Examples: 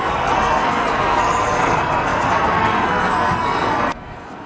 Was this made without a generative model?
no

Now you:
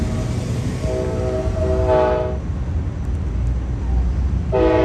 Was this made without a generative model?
yes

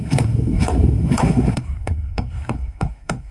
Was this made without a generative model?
no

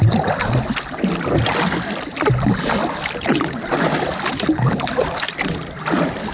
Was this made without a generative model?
yes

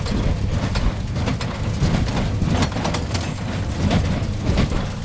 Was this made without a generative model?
yes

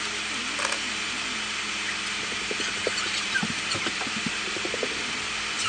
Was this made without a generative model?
yes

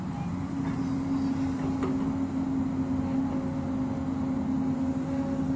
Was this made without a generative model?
yes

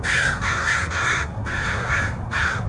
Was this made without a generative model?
no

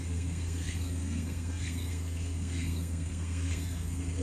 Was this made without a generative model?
no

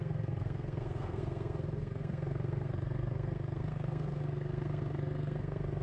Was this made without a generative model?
no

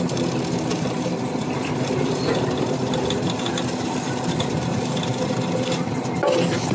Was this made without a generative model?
yes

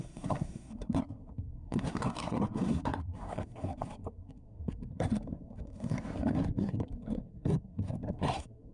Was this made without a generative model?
no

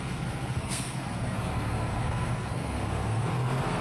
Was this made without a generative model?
no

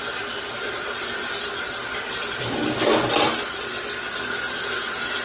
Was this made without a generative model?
yes